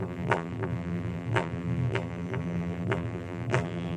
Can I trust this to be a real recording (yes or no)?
no